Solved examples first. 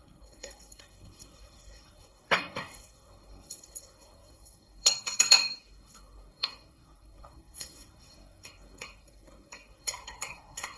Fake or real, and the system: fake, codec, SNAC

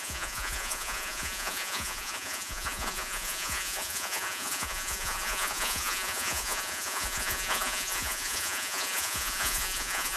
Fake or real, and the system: fake, vocoder, Vocos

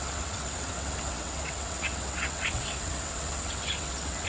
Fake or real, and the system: fake, vocoder, WaveNeXt